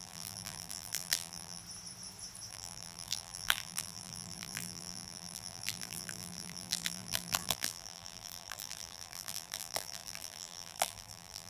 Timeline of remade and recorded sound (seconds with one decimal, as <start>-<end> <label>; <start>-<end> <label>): 0.0-1.6 remade; 1.6-2.5 recorded; 2.5-11.5 remade